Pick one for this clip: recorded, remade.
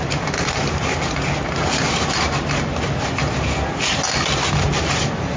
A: recorded